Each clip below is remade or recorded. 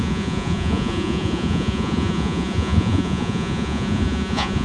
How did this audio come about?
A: remade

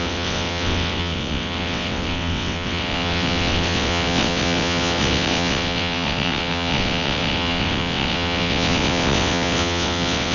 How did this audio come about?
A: remade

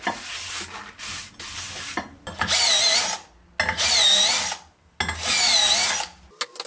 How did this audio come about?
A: recorded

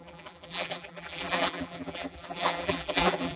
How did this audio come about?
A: remade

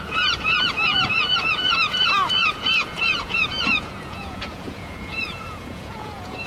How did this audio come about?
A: remade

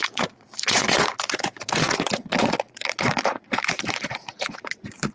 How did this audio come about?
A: remade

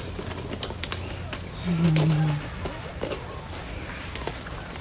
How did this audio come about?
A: recorded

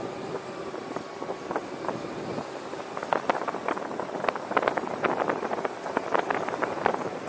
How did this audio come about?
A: recorded